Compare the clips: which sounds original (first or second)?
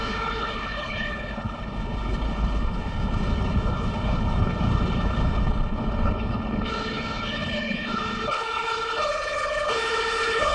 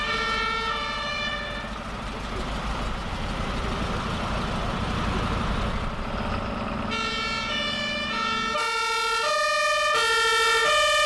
second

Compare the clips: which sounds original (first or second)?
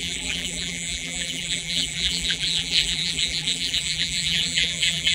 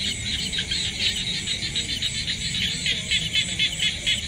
second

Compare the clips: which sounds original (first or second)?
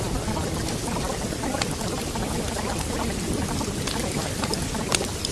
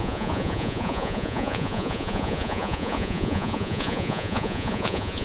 first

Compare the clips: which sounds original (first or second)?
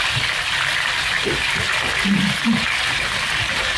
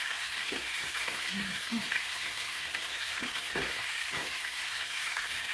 first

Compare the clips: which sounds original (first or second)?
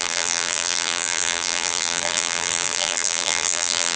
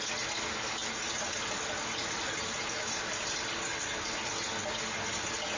second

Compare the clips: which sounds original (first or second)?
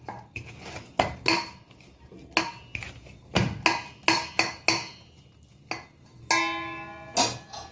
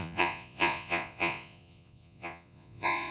first